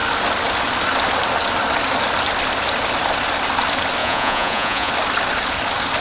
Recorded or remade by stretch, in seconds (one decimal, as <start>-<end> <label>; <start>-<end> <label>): 0.0-4.0 recorded; 4.0-4.9 remade; 4.9-6.0 recorded